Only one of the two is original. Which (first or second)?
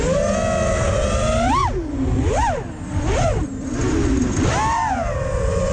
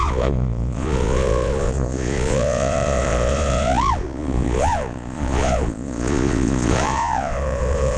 first